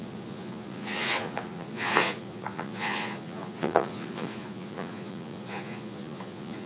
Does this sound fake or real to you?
fake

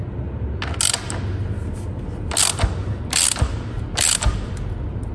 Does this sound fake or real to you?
real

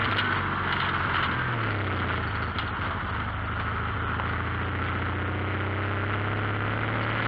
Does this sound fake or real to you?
real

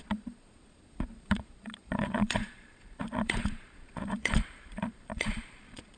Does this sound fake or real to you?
fake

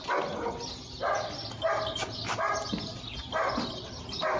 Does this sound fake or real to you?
real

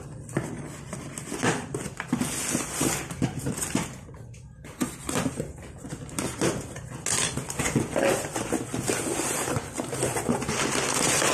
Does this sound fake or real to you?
real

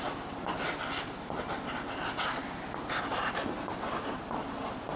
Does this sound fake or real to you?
real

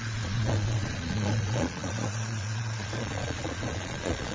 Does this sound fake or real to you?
fake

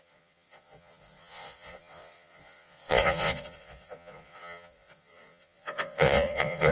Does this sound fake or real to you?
fake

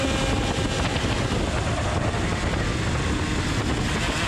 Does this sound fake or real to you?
real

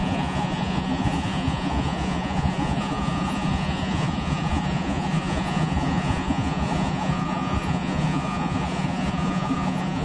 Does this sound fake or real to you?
fake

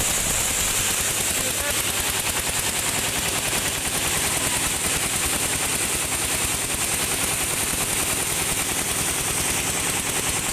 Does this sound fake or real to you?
real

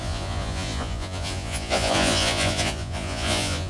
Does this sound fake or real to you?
fake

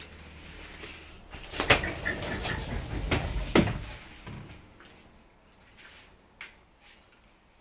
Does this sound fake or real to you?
real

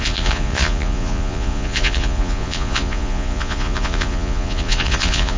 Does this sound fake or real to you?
fake